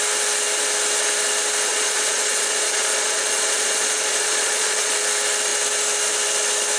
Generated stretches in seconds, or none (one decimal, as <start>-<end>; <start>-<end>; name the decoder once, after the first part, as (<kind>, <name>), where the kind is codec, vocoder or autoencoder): 1.7-4.9 (vocoder, Vocos)